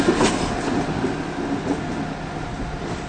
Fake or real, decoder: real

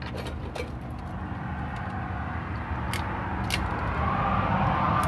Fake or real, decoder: real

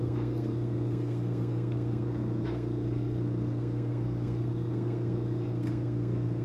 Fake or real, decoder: fake, codec, SNAC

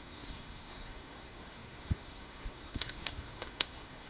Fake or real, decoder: fake, codec, SNAC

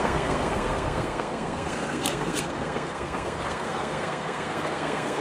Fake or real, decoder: fake, codec, SNAC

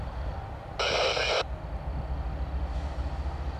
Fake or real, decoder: real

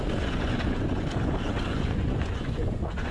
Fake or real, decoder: fake, vocoder, Vocos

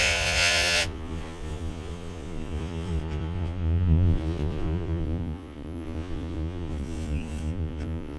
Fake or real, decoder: fake, vocoder, Vocos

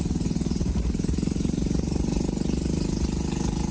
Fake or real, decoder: real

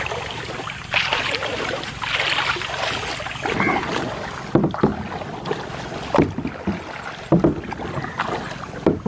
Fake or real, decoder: real